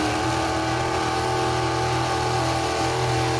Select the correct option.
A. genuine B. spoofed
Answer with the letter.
A